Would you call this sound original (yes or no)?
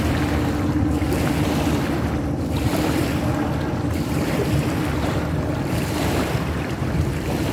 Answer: no